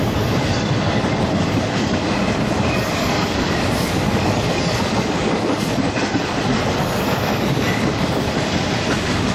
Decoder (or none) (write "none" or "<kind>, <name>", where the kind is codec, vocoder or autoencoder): codec, DAC